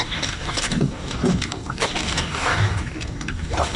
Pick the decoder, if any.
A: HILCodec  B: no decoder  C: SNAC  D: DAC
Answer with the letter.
D